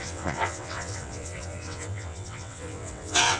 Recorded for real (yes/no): no